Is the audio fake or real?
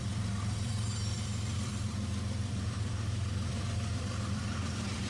fake